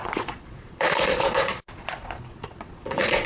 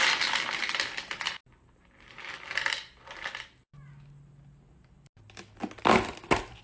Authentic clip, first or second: second